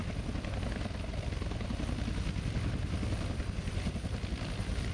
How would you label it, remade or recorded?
recorded